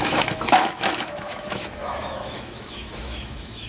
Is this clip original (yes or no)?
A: no